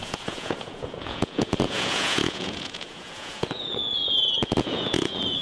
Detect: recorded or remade remade